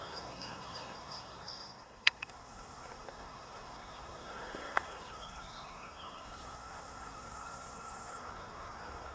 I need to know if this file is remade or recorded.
remade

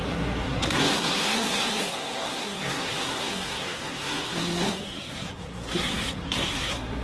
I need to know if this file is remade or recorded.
remade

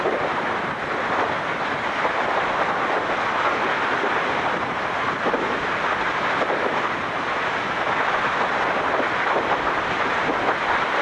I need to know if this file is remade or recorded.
recorded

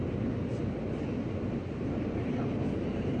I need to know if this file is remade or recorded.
recorded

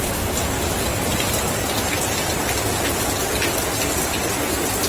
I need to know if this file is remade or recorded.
recorded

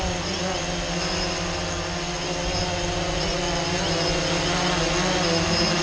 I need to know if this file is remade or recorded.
recorded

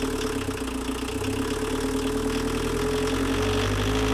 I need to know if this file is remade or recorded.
recorded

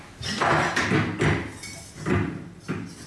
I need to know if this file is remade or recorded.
recorded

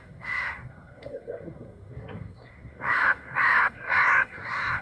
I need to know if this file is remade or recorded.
remade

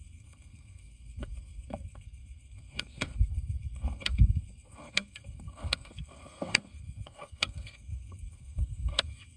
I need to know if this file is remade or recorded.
remade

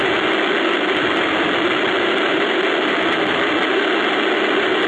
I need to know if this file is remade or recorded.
recorded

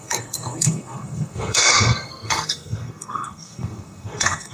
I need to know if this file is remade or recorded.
remade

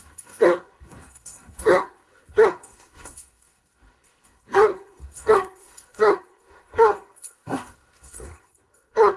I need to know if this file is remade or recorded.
remade